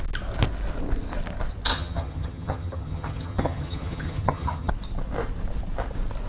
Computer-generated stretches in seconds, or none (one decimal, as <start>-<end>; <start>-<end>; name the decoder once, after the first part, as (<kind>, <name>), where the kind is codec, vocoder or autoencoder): 1.7-4.7 (vocoder, HiFi-GAN)